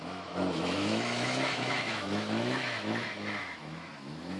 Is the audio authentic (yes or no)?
no